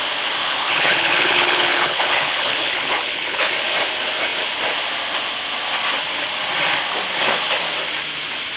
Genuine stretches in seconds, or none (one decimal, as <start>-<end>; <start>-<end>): 0.0-0.4; 3.5-8.6